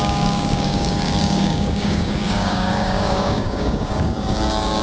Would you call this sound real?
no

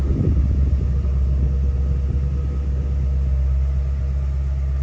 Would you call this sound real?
yes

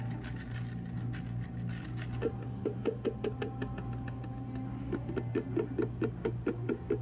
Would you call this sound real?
yes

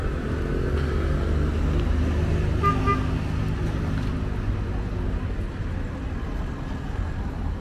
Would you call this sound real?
yes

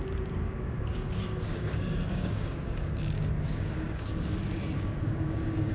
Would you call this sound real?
no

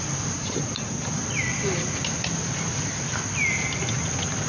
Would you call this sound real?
yes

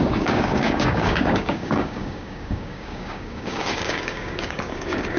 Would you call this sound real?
no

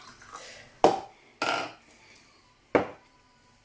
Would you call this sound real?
yes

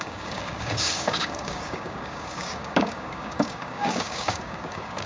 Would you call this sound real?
no